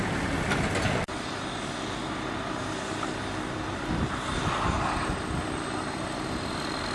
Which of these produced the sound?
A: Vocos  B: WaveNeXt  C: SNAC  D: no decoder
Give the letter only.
D